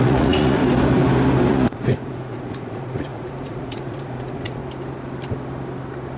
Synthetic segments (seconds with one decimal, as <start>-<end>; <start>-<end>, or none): 0.0-0.6; 1.5-4.6